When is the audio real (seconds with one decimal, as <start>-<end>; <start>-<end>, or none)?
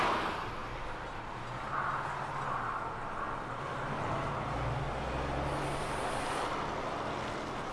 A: 0.0-7.7